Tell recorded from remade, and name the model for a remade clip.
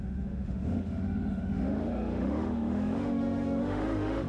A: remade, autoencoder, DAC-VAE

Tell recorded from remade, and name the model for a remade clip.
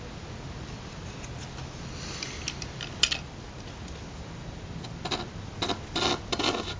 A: recorded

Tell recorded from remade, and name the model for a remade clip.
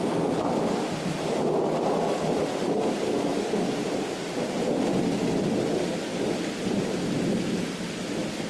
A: recorded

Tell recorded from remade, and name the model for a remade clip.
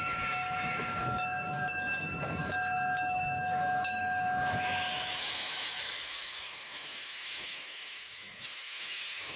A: remade, autoencoder, DAC-VAE